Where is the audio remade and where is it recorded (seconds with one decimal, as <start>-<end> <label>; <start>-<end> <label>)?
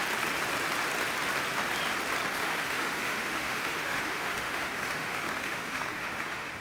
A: 0.0-2.4 recorded; 2.4-6.6 remade